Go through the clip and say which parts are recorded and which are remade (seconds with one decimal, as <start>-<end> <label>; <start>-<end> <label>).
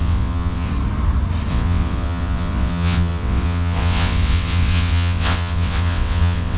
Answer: 0.0-0.7 remade; 0.7-1.5 recorded; 1.5-6.6 remade